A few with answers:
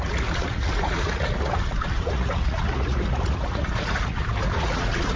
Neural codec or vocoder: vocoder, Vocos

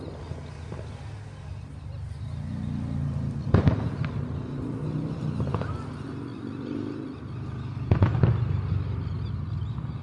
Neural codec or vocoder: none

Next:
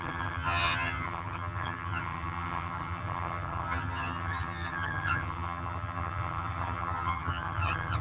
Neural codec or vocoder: vocoder, HiFi-GAN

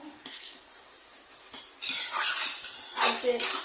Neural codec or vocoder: none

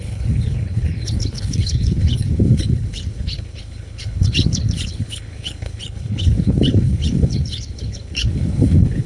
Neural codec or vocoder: codec, HILCodec